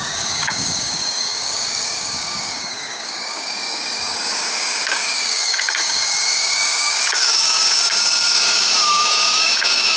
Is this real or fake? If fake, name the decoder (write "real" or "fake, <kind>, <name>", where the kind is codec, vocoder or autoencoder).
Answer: fake, codec, DAC